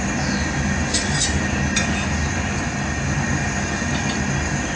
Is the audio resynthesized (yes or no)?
no